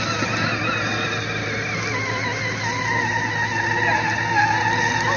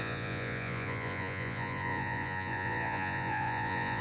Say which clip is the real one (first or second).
first